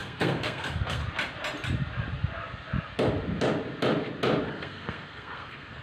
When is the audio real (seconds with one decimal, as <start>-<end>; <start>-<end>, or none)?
1.0-4.5